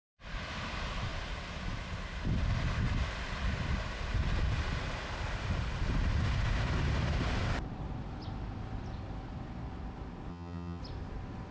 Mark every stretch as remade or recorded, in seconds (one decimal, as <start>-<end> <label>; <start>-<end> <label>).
0.0-10.3 recorded; 10.3-10.8 remade; 10.8-11.5 recorded